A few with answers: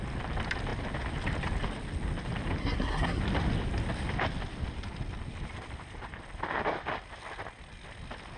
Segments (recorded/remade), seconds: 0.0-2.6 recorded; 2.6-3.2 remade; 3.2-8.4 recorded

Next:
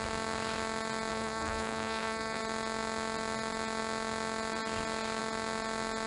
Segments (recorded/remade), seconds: 0.0-1.1 recorded; 1.1-2.4 remade; 2.4-6.1 recorded